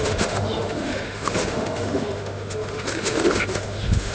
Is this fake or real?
fake